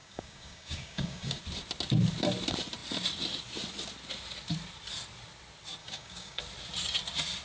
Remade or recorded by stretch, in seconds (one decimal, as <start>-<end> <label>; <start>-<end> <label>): 0.0-1.4 remade; 1.4-5.8 recorded; 5.8-6.4 remade; 6.4-7.4 recorded